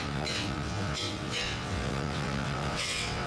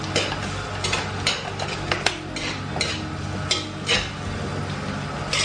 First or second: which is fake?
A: first